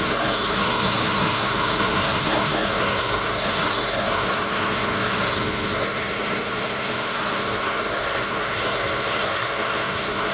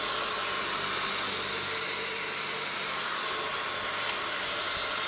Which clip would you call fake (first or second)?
first